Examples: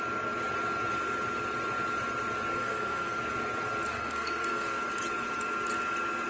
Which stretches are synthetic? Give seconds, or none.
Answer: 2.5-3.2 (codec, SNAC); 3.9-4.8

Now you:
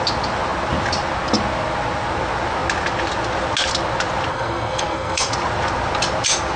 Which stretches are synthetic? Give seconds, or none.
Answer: 4.3-5.3 (codec, SNAC)

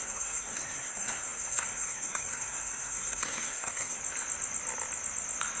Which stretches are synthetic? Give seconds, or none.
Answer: 0.0-4.0 (codec, SNAC)

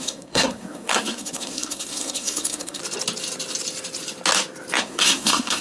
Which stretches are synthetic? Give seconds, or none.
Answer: 0.0-2.8 (codec, SNAC); 4.8-5.6

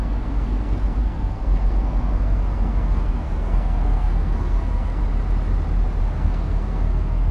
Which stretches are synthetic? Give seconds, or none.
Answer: 0.0-5.0 (codec, SNAC); 6.0-7.3